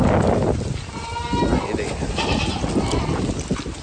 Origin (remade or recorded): recorded